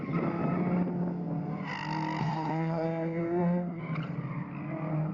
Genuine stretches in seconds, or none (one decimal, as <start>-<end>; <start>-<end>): 0.0-2.2; 3.8-5.1